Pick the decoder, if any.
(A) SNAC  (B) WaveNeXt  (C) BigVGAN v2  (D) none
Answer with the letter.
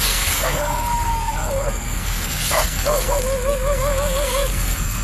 A